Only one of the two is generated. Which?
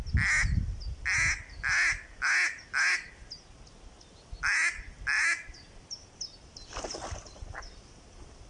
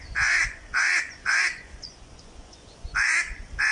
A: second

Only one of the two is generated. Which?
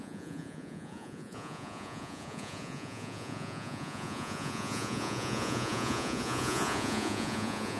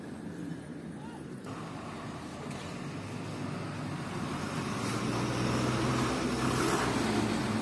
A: first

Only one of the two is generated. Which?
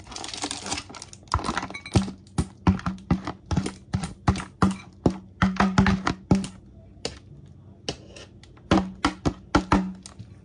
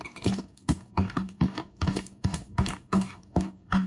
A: second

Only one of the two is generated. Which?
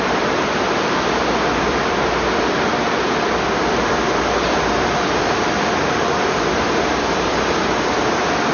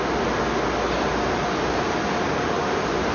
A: first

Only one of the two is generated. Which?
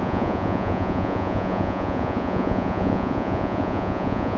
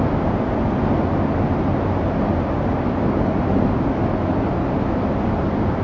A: first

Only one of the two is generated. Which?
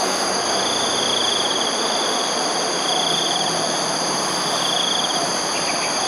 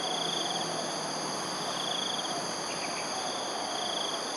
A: first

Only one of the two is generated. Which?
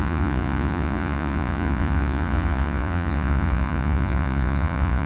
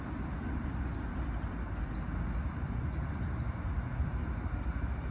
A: first